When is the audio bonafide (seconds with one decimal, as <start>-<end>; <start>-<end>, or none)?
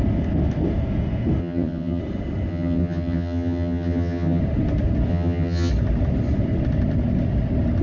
0.0-1.4; 2.0-2.5; 4.4-5.1; 5.7-7.8